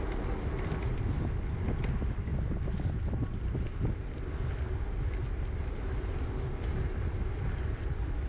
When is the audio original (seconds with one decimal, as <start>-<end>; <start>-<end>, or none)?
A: 0.0-8.3